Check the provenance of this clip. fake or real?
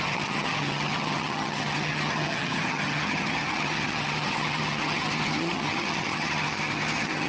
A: fake